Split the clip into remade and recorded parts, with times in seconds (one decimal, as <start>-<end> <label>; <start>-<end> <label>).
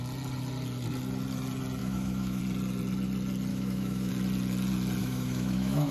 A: 0.0-1.8 recorded; 1.8-2.4 remade; 2.4-3.5 recorded; 3.5-4.1 remade; 4.1-5.0 recorded; 5.0-5.9 remade